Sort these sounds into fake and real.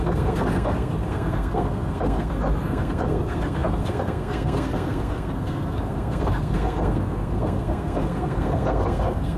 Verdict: fake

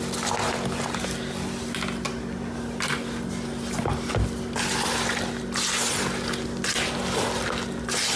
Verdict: real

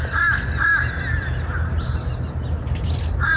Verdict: real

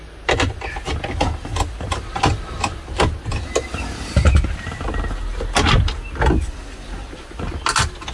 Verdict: real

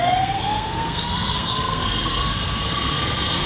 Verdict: fake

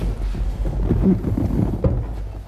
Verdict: real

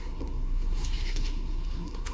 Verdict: fake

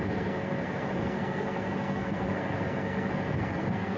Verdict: fake